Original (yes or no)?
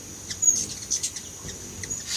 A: yes